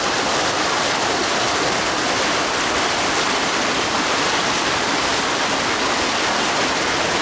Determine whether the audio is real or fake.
real